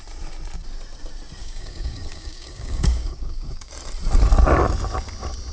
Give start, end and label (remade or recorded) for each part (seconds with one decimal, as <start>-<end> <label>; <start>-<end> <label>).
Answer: 0.0-1.4 recorded; 1.4-3.7 remade; 3.7-5.5 recorded